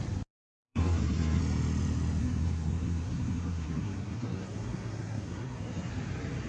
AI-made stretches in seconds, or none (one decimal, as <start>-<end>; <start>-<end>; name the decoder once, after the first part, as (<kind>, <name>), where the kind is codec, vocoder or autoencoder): 0.6-1.4 (codec, SNAC); 2.2-5.9